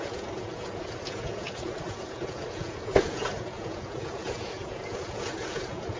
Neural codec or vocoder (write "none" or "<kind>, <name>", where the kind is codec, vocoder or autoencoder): vocoder, Vocos